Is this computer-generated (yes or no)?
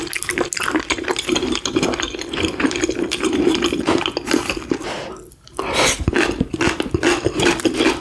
no